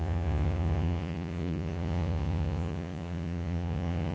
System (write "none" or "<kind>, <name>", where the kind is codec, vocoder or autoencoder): vocoder, Vocos